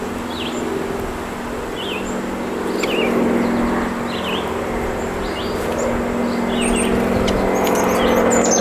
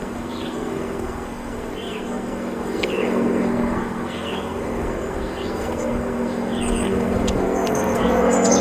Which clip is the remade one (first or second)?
second